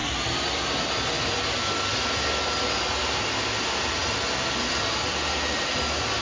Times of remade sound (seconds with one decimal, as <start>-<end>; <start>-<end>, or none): none